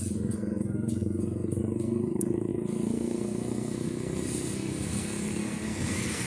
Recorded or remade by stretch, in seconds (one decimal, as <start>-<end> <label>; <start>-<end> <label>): 0.0-6.3 remade